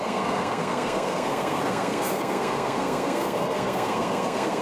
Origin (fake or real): fake